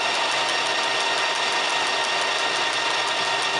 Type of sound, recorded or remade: recorded